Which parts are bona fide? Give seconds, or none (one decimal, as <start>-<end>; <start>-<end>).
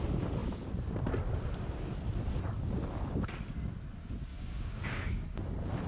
0.0-4.3; 5.2-5.9